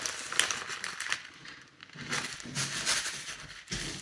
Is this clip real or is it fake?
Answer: real